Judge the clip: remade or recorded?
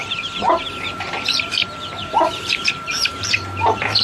remade